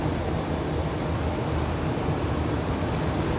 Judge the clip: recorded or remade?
recorded